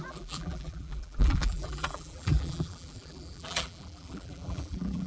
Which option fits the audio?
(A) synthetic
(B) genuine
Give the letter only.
A